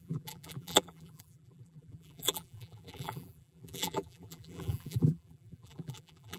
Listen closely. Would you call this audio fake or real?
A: fake